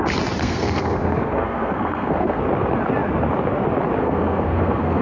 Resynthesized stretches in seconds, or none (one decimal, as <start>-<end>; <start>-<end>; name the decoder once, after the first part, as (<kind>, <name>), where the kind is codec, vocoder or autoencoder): 0.4-2.4 (codec, SNAC); 4.0-5.0

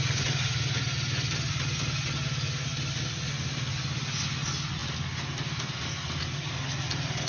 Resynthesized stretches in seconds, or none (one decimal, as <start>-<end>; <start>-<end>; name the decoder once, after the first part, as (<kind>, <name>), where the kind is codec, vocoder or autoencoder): none

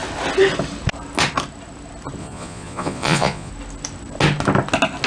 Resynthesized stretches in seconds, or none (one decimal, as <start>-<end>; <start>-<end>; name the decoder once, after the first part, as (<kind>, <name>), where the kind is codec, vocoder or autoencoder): 2.2-3.5 (vocoder, Vocos)

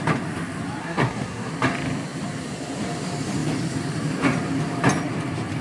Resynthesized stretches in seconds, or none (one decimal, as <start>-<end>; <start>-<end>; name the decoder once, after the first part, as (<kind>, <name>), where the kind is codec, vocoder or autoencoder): 0.8-1.5 (codec, SNAC)

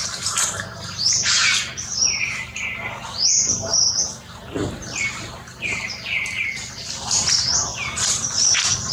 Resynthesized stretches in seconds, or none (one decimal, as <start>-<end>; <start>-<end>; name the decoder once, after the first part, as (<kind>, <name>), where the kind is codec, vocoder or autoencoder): 0.0-1.0 (vocoder, BigVGAN v2); 7.7-8.3

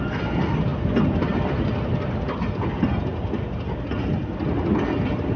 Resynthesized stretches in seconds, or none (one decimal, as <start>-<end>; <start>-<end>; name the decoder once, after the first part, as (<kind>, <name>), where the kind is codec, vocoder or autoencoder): none

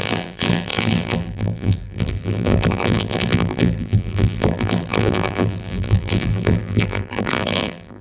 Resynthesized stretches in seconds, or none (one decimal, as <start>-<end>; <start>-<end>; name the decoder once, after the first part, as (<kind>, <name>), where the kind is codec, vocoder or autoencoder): 0.0-8.0 (vocoder, BigVGAN v2)